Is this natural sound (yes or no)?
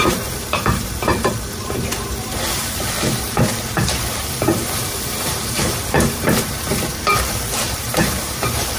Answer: no